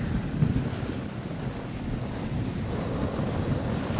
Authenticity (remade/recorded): recorded